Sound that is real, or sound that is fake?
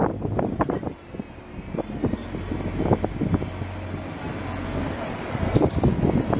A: real